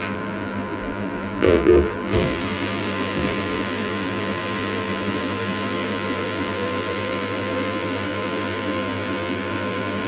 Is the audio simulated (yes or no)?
yes